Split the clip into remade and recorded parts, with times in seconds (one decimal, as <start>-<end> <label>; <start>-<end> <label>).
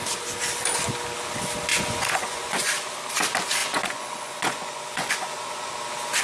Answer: 0.0-1.7 recorded; 1.7-2.7 remade; 2.7-3.6 recorded; 3.6-5.7 remade; 5.7-6.2 recorded